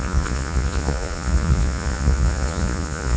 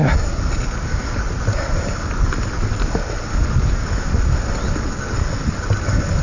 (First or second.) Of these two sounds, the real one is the second